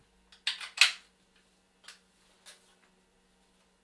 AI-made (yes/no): no